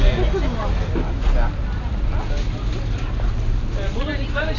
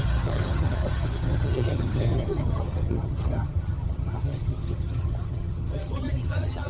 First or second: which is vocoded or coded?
second